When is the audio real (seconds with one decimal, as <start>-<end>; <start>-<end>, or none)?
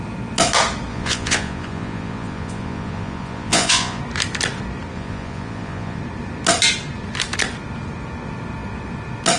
0.0-0.9; 4.0-4.9; 6.0-9.4